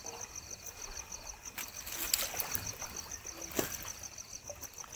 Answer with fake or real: real